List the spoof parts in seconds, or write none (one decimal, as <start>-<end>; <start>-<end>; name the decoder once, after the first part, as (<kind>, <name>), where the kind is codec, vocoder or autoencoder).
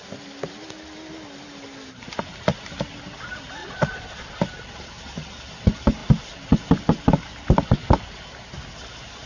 3.6-4.3 (vocoder, Vocos)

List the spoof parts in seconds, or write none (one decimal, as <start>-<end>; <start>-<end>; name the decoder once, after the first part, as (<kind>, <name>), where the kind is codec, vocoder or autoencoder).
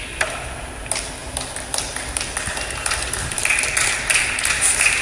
none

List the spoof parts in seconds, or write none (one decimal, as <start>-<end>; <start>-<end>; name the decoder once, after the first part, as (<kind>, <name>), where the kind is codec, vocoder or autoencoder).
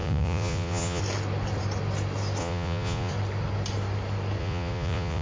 0.0-1.0 (vocoder, Vocos); 2.4-3.1; 4.4-5.2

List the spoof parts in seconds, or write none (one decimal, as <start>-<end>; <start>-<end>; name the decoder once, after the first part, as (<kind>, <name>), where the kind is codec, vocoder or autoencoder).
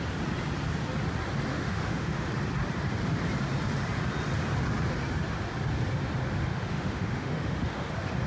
1.5-2.3 (autoencoder, DAC-VAE); 6.5-7.9